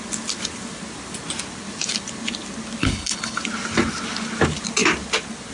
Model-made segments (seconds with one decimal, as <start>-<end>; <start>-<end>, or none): 2.8-3.4